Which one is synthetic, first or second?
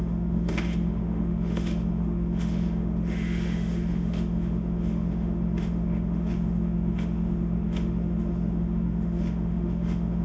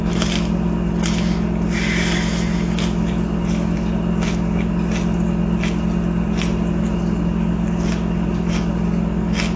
first